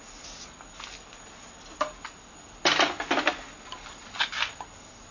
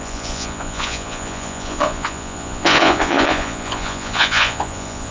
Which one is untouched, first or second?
first